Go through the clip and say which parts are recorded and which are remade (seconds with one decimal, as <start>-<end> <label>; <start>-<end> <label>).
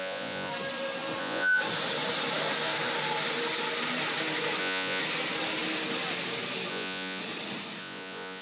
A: 0.0-0.5 remade; 0.5-1.2 recorded; 1.2-1.6 remade; 1.6-4.6 recorded; 4.6-5.0 remade; 5.0-6.7 recorded; 6.7-7.2 remade; 7.2-7.8 recorded; 7.8-8.4 remade